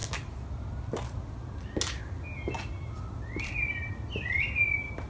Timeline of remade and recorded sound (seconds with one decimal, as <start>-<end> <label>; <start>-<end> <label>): 0.0-5.1 recorded